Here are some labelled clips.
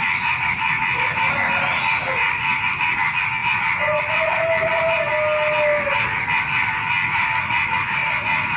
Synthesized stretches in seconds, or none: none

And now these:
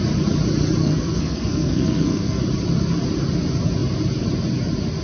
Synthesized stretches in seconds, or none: 0.8-2.4 (codec, SNAC)

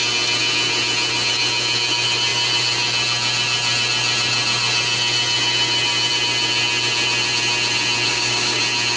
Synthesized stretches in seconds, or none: 8.1-8.6 (codec, DAC)